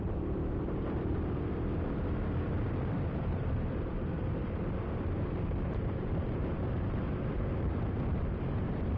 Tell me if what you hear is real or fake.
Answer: fake